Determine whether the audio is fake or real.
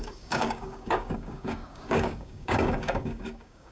fake